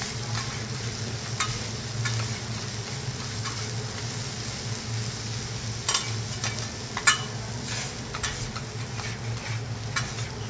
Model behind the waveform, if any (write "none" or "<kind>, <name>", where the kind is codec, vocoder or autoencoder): none